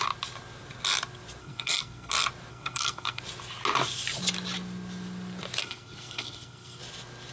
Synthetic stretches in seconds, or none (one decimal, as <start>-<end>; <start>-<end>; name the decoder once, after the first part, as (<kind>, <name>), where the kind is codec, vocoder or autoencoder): 1.4-2.1 (codec, SNAC); 2.5-3.2; 5.6-6.8